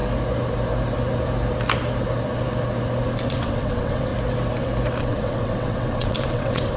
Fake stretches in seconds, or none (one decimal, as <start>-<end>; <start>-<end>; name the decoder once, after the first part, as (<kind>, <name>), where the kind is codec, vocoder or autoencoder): 3.3-4.1 (vocoder, WaveNeXt); 5.0-6.8